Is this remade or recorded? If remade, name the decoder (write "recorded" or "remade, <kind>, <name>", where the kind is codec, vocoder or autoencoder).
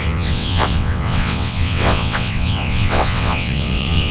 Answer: remade, vocoder, WaveNeXt